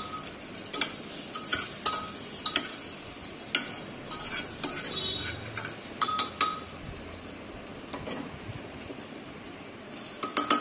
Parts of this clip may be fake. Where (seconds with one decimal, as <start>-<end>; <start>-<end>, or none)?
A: none

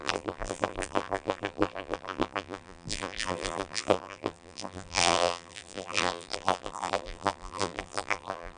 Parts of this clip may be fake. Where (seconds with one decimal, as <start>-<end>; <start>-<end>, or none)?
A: 0.0-8.6

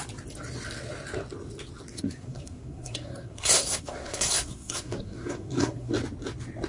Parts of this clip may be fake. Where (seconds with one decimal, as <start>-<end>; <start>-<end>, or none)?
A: 1.9-5.9

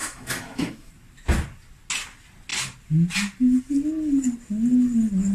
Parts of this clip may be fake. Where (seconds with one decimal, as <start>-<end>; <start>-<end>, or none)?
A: 0.0-0.9